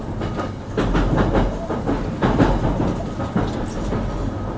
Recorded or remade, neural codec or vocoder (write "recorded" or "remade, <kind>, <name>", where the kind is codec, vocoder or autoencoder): recorded